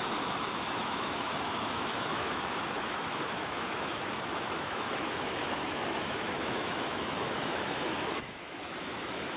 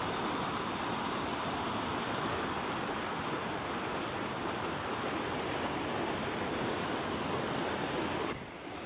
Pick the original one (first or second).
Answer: second